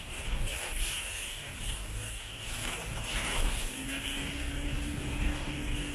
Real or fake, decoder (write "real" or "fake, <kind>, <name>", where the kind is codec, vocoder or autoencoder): fake, codec, DAC